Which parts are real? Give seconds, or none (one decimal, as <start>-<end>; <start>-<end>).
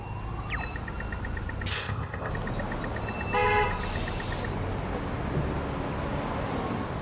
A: 0.0-1.7; 2.3-7.0